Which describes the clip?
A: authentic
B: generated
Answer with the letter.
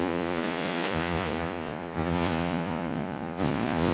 B